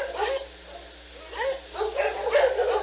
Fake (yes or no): no